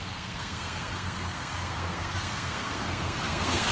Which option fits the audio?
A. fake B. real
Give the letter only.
A